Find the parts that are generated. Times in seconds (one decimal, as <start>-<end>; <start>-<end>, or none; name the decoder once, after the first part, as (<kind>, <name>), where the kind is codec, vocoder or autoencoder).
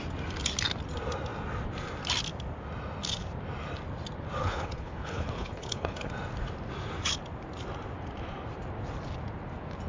4.4-6.1 (codec, HILCodec)